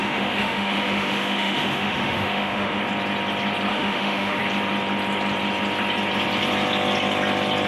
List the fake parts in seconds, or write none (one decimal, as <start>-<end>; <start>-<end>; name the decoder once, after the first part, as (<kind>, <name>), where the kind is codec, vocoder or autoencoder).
0.0-2.8 (autoencoder, DAC-VAE); 3.7-4.4